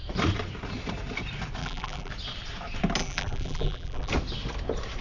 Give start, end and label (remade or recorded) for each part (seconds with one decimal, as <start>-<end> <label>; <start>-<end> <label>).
0.0-1.6 recorded; 1.6-2.1 remade; 2.1-3.0 recorded; 3.0-4.1 remade; 4.1-5.0 recorded